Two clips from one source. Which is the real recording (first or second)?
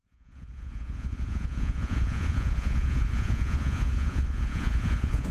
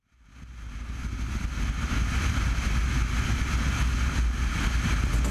second